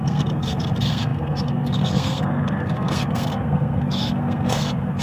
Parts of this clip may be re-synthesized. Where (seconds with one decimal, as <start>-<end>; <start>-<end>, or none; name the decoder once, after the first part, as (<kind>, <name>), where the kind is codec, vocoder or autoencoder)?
0.0-5.0 (codec, SNAC)